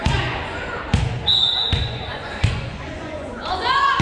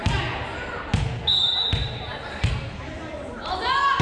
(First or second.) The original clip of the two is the second